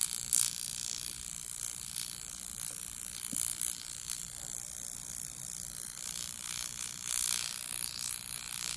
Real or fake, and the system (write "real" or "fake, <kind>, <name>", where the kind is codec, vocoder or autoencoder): real